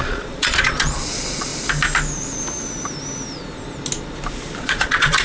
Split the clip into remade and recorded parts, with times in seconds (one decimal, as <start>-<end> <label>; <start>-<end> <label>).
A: 0.0-1.5 remade; 1.5-4.6 recorded; 4.6-5.2 remade